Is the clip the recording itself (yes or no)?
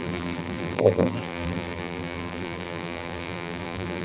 no